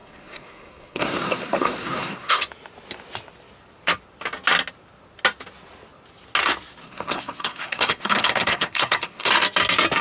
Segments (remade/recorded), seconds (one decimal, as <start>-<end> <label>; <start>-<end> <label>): 0.0-2.4 remade; 2.4-6.8 recorded; 6.8-9.3 remade; 9.3-10.0 recorded